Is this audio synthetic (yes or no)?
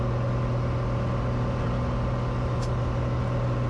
no